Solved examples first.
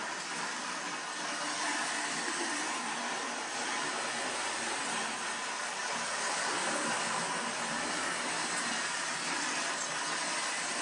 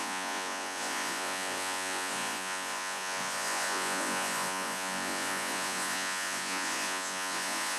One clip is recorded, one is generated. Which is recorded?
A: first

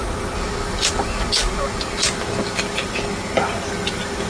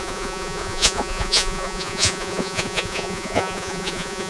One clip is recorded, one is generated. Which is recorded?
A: first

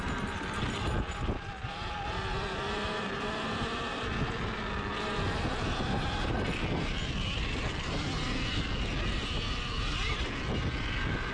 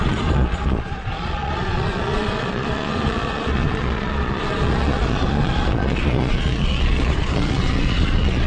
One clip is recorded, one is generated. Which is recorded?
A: first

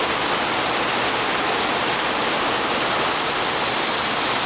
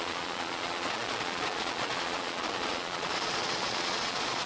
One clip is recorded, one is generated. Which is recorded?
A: first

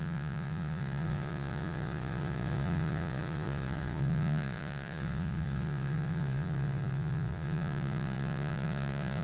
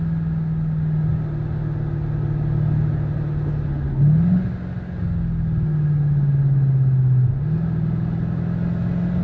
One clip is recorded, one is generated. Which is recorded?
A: second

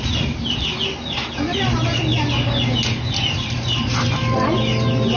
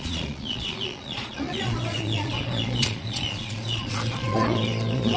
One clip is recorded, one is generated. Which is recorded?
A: first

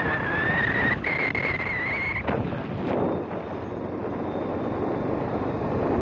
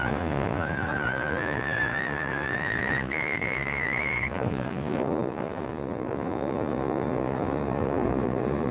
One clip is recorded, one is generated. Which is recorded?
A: first